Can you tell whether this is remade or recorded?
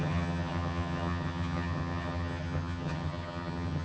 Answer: remade